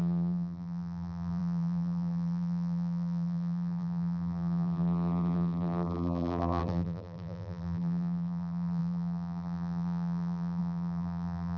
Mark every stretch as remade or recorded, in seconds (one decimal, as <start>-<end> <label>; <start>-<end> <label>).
0.0-11.6 remade